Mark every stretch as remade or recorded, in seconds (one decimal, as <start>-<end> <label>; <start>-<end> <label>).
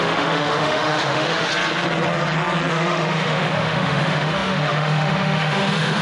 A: 0.0-1.5 remade; 1.5-2.7 recorded; 2.7-6.0 remade